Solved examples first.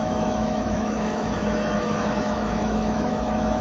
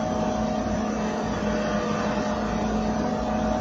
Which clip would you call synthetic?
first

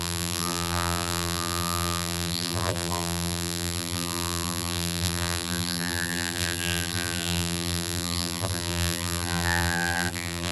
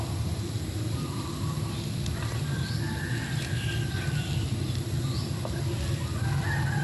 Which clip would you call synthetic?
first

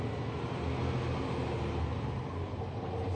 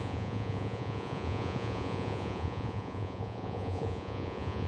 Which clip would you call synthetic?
second